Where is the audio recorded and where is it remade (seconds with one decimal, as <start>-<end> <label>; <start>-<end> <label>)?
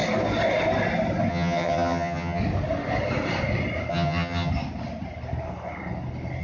0.0-1.3 recorded; 1.3-2.4 remade; 2.4-3.9 recorded; 3.9-4.5 remade; 4.5-6.4 recorded